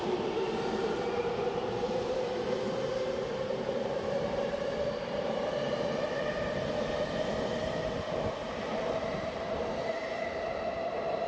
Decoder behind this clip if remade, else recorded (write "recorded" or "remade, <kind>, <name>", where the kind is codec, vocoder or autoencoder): remade, vocoder, BigVGAN v2